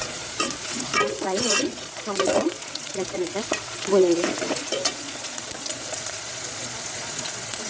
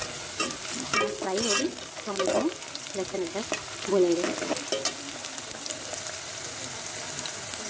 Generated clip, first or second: first